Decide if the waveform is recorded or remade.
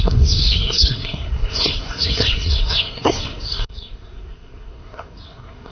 remade